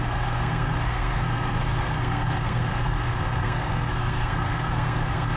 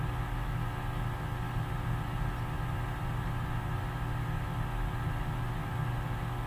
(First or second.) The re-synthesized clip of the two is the first